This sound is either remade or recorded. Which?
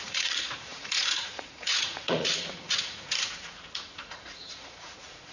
remade